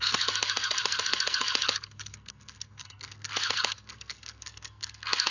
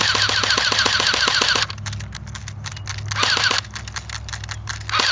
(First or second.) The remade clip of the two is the first